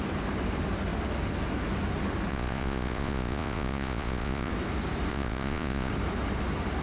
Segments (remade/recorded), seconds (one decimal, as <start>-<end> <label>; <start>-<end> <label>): 0.0-2.3 recorded; 2.3-4.5 remade; 4.5-5.1 recorded; 5.1-5.9 remade; 5.9-6.8 recorded